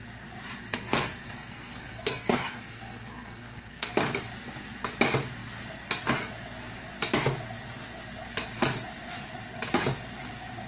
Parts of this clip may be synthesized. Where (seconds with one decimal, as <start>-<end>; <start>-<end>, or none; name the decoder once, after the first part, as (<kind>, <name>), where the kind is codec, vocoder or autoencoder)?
0.7-3.9 (codec, SNAC)